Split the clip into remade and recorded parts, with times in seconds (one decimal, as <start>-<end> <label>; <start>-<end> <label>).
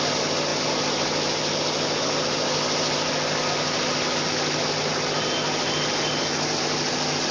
0.0-7.3 recorded